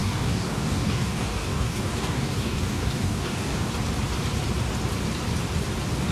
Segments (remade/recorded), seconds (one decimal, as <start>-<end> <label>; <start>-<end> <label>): 0.0-3.7 remade; 3.7-6.1 recorded